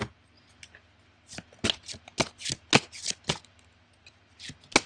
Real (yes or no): yes